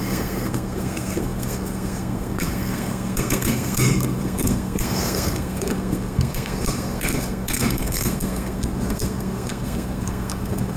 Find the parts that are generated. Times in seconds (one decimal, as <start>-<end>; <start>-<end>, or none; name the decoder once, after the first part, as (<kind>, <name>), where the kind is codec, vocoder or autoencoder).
0.0-10.8 (codec, SNAC)